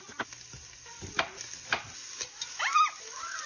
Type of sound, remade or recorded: recorded